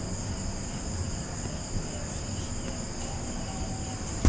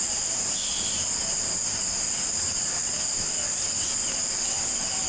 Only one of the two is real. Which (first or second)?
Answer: first